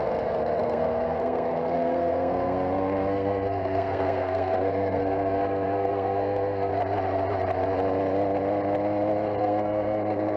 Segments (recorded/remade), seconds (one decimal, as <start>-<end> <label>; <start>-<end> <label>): 0.0-6.7 remade; 6.7-9.4 recorded; 9.4-10.4 remade